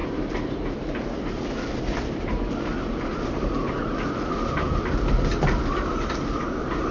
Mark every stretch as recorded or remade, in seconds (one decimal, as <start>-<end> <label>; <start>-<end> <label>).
0.0-0.7 remade; 0.7-6.9 recorded